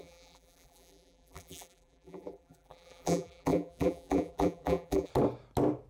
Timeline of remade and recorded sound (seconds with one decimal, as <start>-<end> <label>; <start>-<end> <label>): 0.0-5.1 remade; 5.1-5.9 recorded